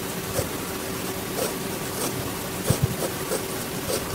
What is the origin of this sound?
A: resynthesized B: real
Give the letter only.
B